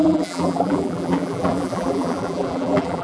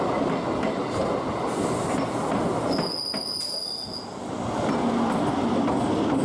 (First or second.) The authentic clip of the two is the second